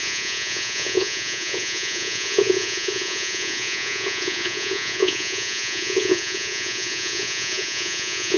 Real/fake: fake